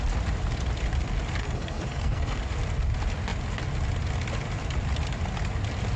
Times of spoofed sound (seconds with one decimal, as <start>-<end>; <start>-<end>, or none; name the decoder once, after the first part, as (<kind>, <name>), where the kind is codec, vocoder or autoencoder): 1.4-2.4 (codec, SNAC)

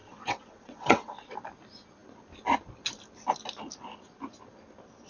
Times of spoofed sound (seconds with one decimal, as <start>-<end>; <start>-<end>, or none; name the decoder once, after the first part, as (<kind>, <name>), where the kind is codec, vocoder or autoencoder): 0.0-1.3 (vocoder, WaveNeXt)

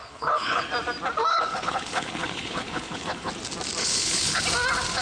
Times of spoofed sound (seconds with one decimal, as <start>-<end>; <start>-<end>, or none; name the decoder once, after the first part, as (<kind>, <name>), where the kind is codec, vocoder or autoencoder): 0.0-0.7 (codec, HILCodec); 1.3-3.3; 3.8-4.4

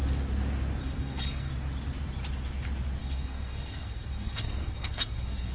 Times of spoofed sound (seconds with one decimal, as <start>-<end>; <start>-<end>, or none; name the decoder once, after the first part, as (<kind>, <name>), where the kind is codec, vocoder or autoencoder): 0.8-1.5 (codec, SNAC); 3.0-5.5